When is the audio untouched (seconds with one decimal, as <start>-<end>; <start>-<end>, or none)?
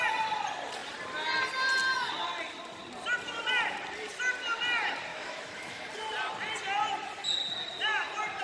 0.0-5.1; 5.9-8.4